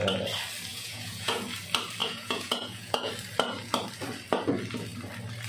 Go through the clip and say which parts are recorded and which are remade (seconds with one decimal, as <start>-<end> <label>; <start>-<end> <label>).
0.0-0.7 recorded; 0.7-1.4 remade; 1.4-2.0 recorded; 2.0-3.1 remade; 3.1-5.5 recorded